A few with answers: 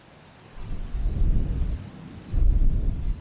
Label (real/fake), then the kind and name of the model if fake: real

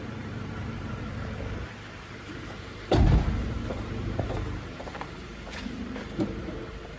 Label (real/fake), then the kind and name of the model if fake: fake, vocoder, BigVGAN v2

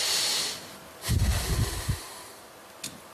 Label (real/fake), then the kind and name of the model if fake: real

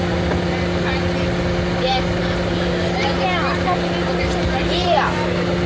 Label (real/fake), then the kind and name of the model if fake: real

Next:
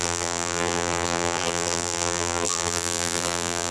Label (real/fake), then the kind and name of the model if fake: fake, vocoder, BigVGAN v2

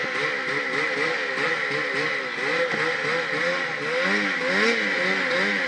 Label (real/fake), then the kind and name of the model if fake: real